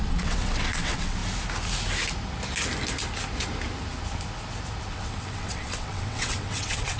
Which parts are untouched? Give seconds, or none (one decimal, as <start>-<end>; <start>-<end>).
1.2-4.9